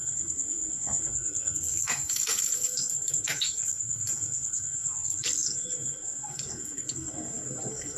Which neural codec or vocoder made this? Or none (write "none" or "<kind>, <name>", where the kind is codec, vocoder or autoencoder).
codec, SNAC